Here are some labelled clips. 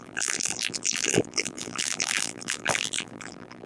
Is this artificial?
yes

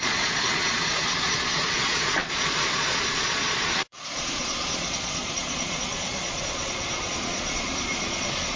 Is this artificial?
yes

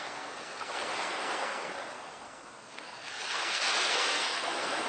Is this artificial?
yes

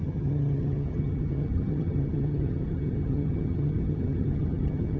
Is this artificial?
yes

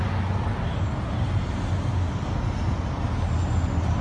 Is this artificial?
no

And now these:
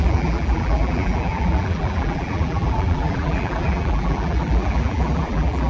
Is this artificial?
yes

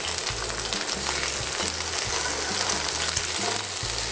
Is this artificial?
no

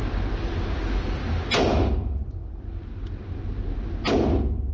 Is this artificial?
no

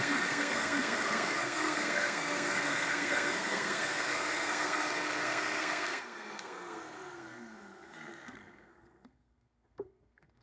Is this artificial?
yes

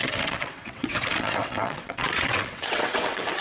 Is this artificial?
yes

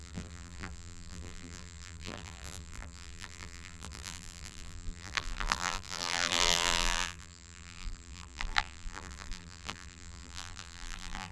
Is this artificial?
yes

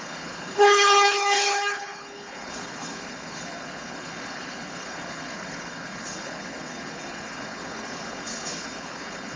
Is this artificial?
yes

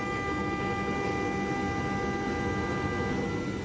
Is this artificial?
no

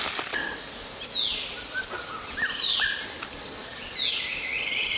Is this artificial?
no